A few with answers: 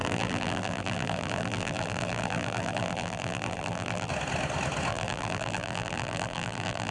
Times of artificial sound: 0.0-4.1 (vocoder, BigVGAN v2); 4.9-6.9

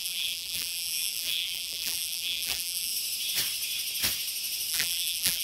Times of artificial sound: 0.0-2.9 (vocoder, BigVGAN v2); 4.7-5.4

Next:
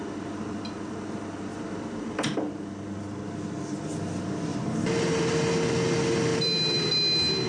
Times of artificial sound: 1.5-3.4 (vocoder, BigVGAN v2); 4.5-5.3; 6.3-6.9

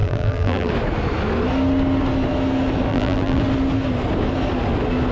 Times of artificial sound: 0.0-0.7 (vocoder, BigVGAN v2); 2.9-3.4

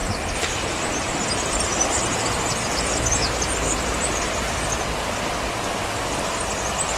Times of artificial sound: 0.0-1.1 (vocoder, BigVGAN v2); 3.2-6.2

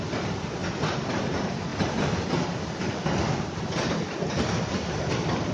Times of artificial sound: 0.0-0.6 (vocoder, BigVGAN v2); 1.2-5.5